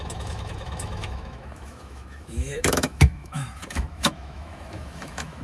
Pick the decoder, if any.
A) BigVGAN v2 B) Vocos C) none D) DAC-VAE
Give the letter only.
D